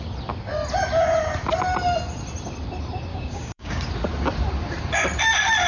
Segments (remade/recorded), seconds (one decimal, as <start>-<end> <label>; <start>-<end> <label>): 0.0-3.1 recorded; 3.1-3.8 remade; 3.8-5.7 recorded